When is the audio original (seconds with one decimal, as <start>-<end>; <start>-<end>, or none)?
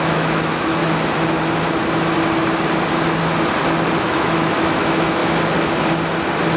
0.8-4.0; 5.2-6.6